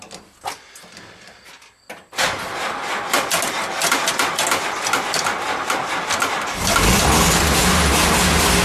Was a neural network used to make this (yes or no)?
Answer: no